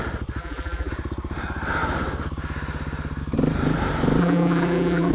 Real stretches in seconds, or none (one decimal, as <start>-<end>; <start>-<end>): 0.0-0.4; 0.9-4.2